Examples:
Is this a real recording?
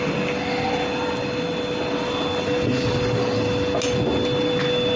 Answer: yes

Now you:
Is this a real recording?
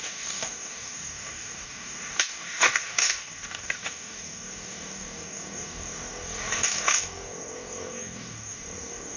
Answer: no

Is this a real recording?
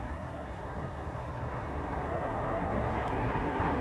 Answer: no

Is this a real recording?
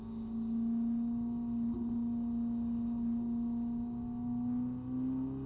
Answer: yes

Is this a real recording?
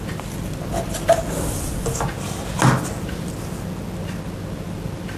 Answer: yes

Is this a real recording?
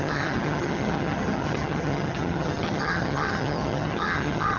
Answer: no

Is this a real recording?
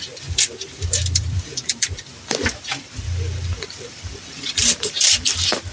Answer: no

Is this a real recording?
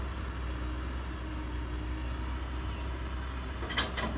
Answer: yes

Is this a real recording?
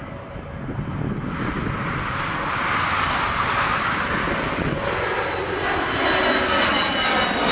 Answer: yes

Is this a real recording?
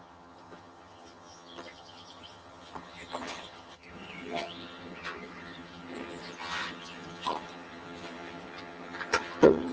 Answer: no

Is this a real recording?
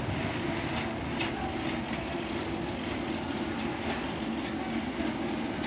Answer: yes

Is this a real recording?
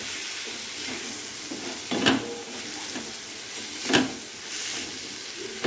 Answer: yes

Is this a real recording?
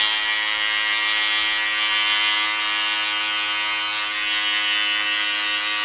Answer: yes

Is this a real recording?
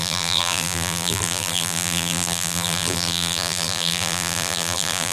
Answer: no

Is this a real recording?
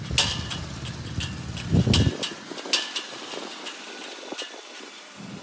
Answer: yes